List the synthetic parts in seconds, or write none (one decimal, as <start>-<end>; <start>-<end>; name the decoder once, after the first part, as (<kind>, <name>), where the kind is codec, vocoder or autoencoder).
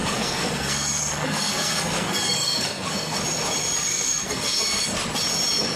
0.0-3.2 (codec, SNAC); 3.9-4.8